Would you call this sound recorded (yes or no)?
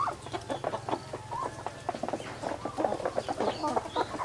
yes